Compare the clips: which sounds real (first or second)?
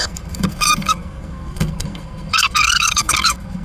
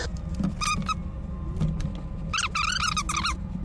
second